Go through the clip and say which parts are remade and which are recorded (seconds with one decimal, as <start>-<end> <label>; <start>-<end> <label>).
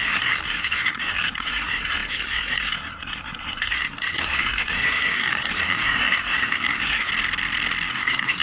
0.0-7.1 remade; 7.1-7.9 recorded; 7.9-8.4 remade